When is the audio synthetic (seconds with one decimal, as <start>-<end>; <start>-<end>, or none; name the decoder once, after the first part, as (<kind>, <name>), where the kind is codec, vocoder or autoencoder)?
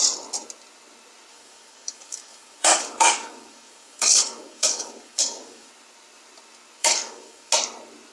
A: 1.3-5.7 (codec, DAC); 6.8-7.5